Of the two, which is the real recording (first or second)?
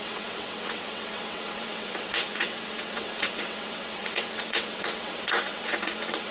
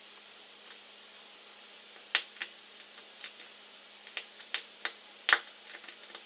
second